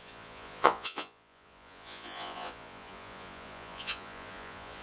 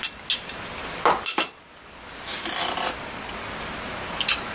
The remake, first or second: first